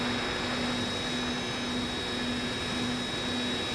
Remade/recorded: recorded